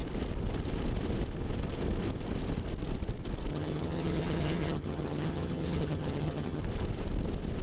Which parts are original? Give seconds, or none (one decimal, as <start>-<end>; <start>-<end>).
0.0-3.5; 6.6-7.6